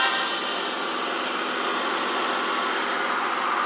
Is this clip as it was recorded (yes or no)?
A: yes